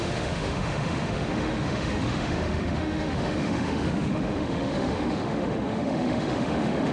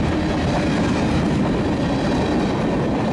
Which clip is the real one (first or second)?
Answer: second